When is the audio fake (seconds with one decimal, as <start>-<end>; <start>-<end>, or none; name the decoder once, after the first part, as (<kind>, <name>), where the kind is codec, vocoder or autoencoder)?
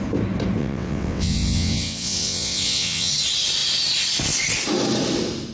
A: 0.6-3.1 (vocoder, WaveNeXt)